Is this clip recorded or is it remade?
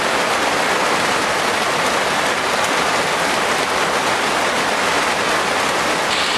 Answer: recorded